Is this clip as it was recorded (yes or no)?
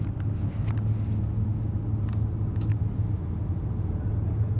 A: yes